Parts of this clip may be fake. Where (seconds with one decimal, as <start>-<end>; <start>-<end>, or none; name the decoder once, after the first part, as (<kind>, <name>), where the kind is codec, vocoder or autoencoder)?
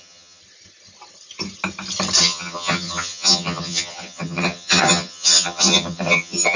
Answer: 0.0-0.4 (vocoder, HiFi-GAN); 2.2-6.6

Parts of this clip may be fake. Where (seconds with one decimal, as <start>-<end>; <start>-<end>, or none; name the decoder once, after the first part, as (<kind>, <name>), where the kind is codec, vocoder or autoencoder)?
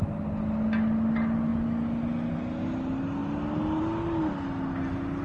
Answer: none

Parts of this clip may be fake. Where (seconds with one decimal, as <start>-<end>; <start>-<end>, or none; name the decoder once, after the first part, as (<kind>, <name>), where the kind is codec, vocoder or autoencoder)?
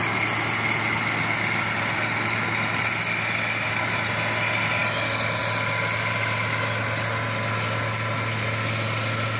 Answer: none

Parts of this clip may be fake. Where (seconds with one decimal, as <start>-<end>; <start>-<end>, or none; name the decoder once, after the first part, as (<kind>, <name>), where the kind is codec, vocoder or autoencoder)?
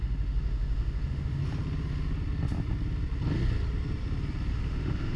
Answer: 0.0-1.4 (autoencoder, DAC-VAE); 4.5-5.2